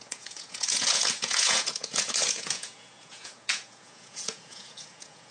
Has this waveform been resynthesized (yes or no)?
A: yes